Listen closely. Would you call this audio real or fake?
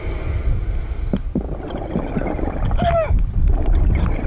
real